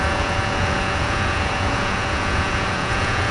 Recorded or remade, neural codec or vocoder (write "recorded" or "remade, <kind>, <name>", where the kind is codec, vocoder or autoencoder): remade, vocoder, Vocos